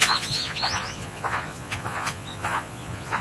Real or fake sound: fake